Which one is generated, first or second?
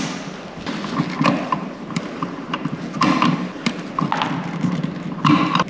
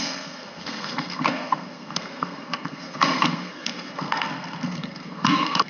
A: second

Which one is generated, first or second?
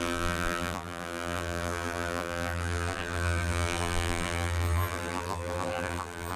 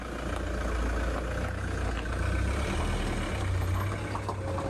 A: first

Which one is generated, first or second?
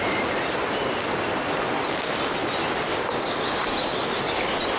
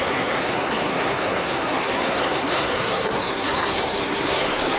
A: second